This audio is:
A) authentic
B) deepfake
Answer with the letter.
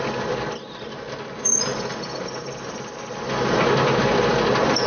A